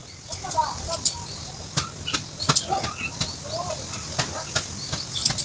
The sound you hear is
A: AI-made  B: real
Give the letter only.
B